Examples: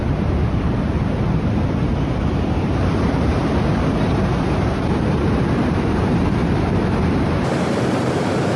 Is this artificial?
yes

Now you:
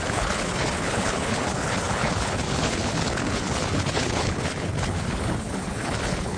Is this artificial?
yes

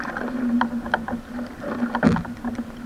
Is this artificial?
no